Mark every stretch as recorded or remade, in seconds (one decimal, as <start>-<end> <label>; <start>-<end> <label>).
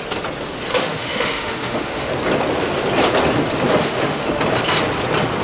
0.0-0.7 recorded; 0.7-2.1 remade; 2.1-3.8 recorded; 3.8-4.4 remade; 4.4-5.4 recorded